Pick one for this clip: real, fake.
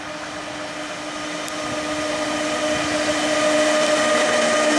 real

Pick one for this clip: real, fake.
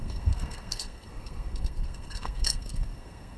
fake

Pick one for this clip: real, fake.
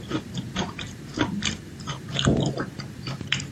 fake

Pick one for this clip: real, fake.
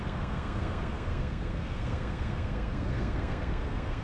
fake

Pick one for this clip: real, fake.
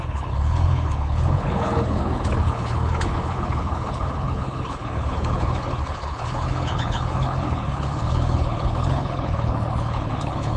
fake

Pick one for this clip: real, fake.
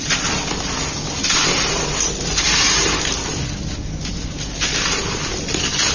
real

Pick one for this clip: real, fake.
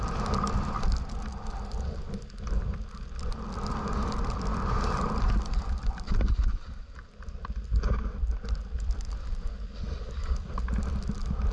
real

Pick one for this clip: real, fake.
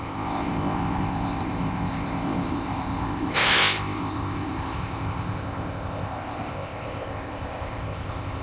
fake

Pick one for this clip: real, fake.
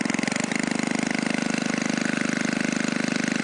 real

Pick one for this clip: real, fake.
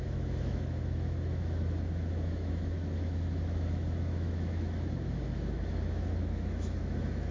fake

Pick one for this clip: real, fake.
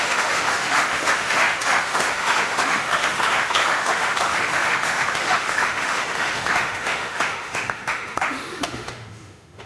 fake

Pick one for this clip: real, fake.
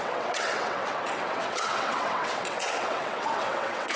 fake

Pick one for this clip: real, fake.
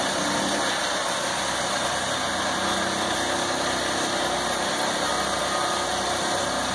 real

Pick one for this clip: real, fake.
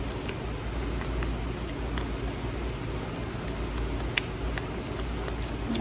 real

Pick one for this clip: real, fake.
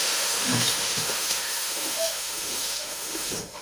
fake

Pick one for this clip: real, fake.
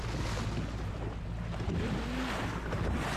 real